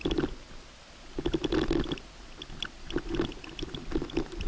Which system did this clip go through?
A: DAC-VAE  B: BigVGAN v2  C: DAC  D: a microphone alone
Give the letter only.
D